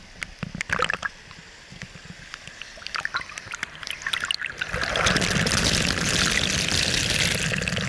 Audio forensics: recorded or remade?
recorded